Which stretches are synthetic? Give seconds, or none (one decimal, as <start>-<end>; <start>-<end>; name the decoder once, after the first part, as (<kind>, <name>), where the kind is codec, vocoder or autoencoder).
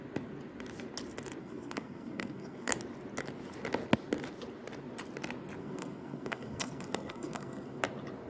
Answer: 1.4-2.7 (codec, SNAC); 5.6-7.8